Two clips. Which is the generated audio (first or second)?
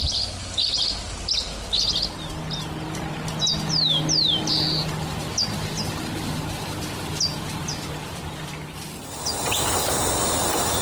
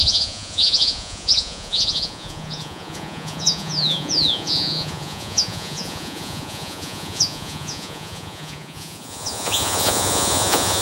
second